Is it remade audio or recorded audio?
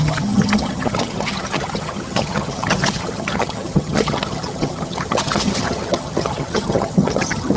remade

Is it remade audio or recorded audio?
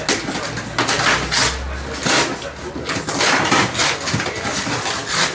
recorded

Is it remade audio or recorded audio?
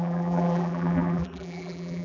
remade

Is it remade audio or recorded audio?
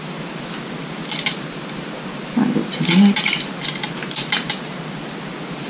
recorded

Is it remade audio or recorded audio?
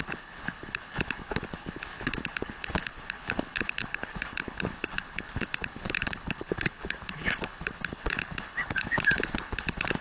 remade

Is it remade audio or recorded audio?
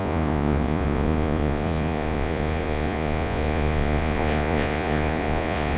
remade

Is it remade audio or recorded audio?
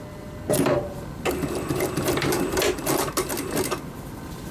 recorded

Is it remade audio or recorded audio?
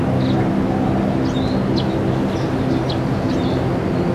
recorded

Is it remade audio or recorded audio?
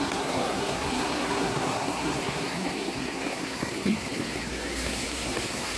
remade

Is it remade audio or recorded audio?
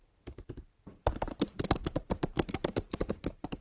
remade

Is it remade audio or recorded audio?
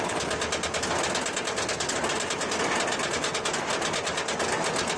recorded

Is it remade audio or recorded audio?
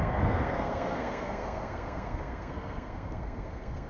remade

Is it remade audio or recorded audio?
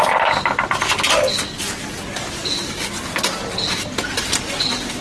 recorded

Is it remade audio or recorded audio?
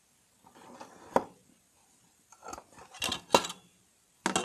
recorded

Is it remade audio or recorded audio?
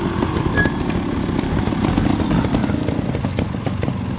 recorded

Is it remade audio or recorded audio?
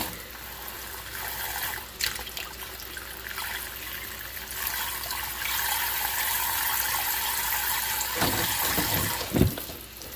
remade